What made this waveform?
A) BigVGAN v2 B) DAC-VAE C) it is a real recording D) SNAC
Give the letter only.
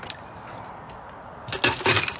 C